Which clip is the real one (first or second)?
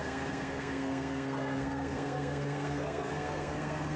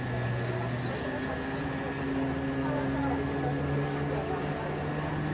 second